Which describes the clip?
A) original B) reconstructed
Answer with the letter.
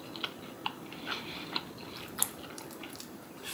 A